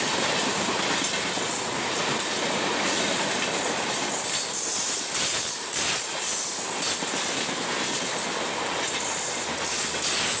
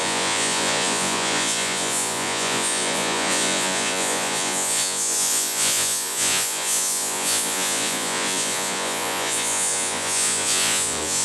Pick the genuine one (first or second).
first